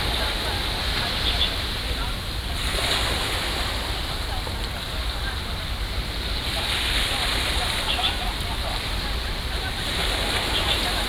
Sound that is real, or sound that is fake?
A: real